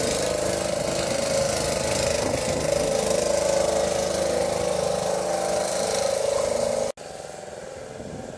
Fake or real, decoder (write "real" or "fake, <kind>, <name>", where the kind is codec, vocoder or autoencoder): real